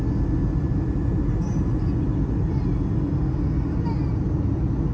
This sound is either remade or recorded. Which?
recorded